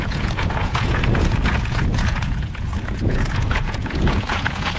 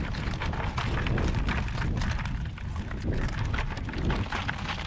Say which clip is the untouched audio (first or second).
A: second